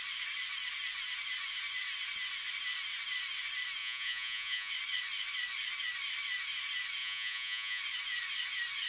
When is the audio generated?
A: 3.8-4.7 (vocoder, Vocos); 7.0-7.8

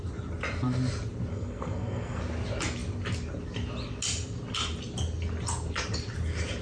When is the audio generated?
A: 1.3-2.2 (codec, SNAC)

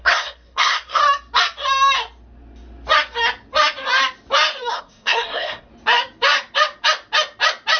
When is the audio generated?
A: 0.0-1.0 (codec, SNAC); 4.7-5.7

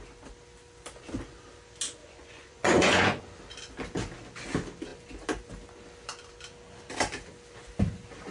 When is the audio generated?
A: 2.0-3.2 (vocoder, Vocos)

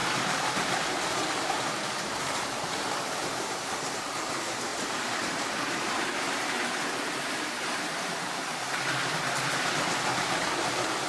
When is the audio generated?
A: 0.0-11.1 (vocoder, BigVGAN v2)

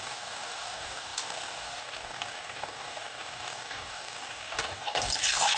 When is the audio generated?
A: 0.0-5.6 (codec, DAC)